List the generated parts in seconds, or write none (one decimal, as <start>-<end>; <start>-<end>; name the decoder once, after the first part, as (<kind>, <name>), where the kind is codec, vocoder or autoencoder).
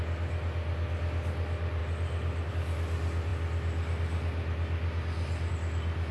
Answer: none